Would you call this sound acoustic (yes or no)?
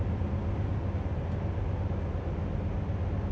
yes